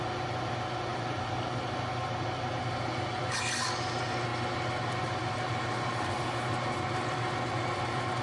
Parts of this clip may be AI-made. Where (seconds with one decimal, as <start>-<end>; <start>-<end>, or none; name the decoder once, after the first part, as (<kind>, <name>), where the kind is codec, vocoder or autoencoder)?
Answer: none